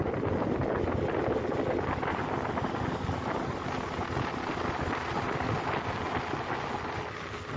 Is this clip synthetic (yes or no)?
no